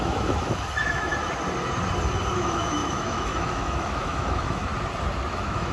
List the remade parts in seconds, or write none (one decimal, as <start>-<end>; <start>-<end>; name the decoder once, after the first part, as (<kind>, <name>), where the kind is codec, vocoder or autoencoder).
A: 0.0-1.1 (autoencoder, DAC-VAE); 2.3-4.7; 5.3-5.7